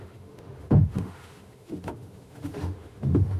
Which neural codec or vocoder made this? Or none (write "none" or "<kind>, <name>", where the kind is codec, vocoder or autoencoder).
autoencoder, DAC-VAE